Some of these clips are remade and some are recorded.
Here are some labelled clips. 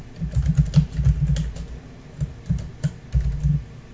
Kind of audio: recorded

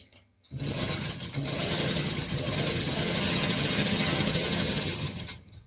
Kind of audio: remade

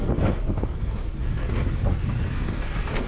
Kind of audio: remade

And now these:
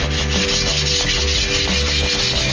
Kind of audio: recorded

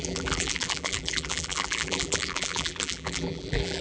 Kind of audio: remade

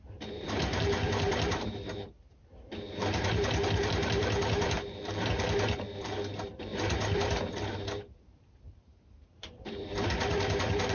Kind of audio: remade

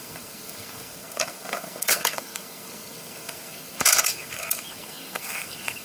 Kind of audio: remade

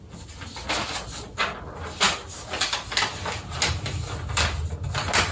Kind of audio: recorded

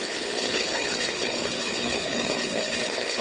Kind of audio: remade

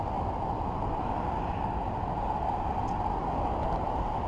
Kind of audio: recorded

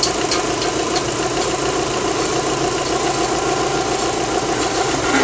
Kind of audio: recorded